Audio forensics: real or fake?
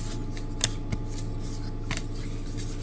real